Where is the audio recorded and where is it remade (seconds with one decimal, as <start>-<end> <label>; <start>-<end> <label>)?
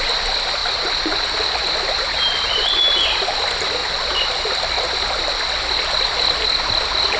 0.0-7.2 recorded